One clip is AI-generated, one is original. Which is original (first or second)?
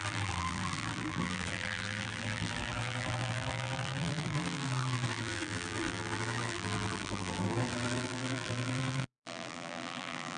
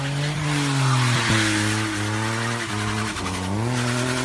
second